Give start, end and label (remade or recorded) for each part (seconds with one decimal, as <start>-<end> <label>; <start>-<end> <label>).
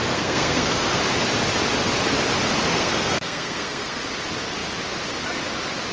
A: 0.0-1.0 remade; 1.0-2.7 recorded; 2.7-4.0 remade; 4.0-5.9 recorded